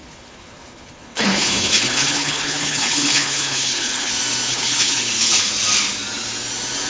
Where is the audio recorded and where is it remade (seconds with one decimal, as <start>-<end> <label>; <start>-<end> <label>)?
0.0-4.1 remade; 4.1-4.5 recorded; 4.5-5.5 remade; 5.5-6.9 recorded